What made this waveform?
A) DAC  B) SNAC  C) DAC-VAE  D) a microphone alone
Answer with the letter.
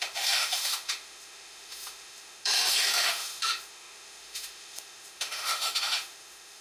C